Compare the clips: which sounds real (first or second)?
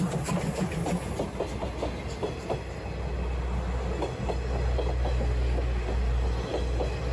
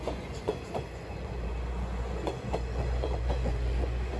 first